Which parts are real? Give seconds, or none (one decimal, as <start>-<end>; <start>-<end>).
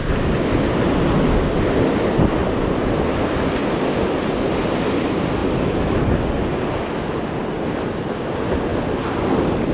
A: 0.0-2.4; 3.1-9.7